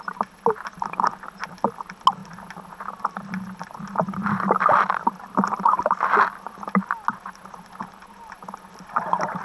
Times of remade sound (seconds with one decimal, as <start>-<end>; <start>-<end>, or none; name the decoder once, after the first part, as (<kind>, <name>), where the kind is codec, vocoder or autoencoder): none